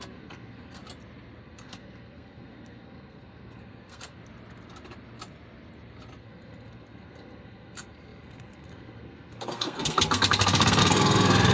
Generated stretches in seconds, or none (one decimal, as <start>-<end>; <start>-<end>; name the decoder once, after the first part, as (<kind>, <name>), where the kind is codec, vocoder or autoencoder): 0.0-0.8 (codec, SNAC); 1.4-4.2; 6.2-11.5